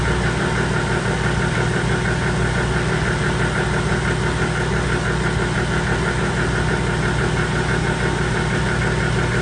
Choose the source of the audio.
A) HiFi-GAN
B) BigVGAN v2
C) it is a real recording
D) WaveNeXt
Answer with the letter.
C